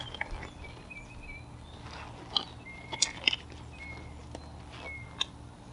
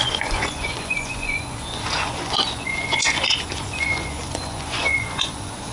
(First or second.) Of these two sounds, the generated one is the second